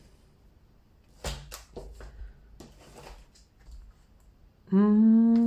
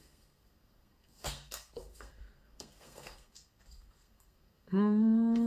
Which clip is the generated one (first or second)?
second